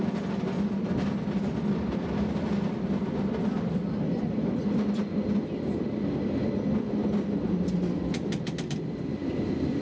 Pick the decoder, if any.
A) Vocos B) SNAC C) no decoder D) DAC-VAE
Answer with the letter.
C